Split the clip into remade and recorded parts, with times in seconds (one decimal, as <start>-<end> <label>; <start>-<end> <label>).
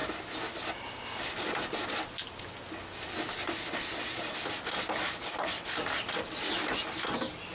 0.0-7.5 recorded